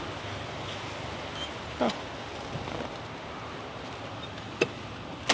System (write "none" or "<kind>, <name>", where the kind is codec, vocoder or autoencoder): none